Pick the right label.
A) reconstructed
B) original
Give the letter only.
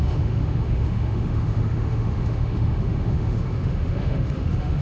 A